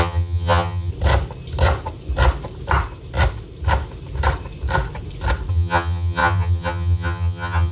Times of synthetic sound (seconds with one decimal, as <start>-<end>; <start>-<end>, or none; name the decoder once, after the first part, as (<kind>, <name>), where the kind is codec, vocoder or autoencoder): 0.0-0.9 (vocoder, HiFi-GAN); 5.5-7.7